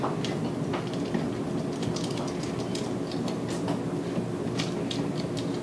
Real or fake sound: real